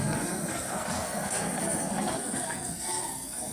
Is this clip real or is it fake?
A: fake